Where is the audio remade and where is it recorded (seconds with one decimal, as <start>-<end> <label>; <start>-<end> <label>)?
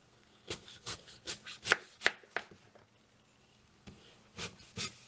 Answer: 0.0-1.3 remade; 1.3-3.4 recorded; 3.4-4.2 remade; 4.2-5.1 recorded